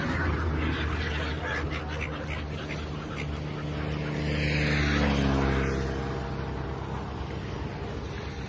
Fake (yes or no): no